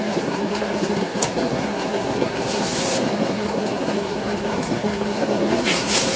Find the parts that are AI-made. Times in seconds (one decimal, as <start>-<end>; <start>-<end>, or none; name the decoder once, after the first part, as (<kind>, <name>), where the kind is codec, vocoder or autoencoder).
0.0-6.2 (codec, SNAC)

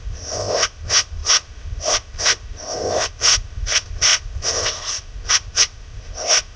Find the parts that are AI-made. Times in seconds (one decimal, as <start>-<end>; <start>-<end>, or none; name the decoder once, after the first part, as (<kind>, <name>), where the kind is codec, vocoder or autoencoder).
0.0-6.6 (codec, ZipCodec)